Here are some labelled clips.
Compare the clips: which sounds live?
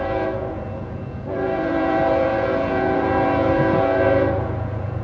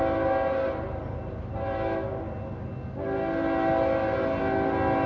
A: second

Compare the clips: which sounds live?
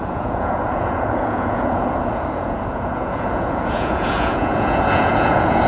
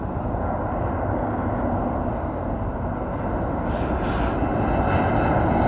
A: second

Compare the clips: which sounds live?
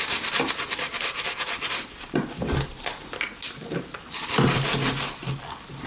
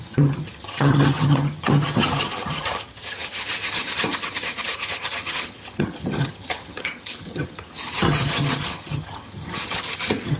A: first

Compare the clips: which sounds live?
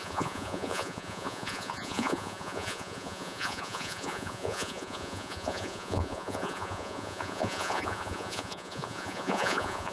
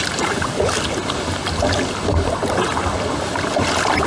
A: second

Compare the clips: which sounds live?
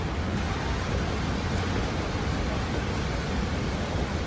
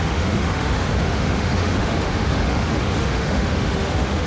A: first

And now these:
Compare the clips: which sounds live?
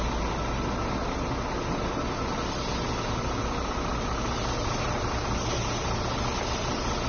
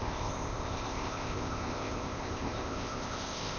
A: first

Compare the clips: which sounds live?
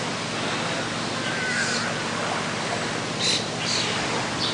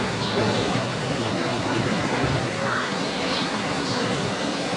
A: first